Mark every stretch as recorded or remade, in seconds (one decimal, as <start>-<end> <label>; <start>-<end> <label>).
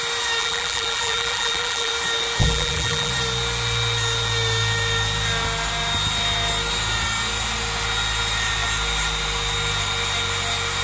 0.0-0.4 recorded; 0.4-1.9 remade; 1.9-2.4 recorded; 2.4-3.1 remade; 3.1-10.8 recorded